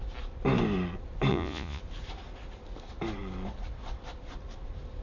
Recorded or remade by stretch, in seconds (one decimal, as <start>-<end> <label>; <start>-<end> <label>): 0.0-1.3 recorded; 1.3-1.8 remade; 1.8-5.0 recorded